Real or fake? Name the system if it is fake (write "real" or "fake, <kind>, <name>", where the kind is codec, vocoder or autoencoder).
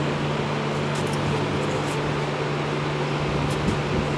real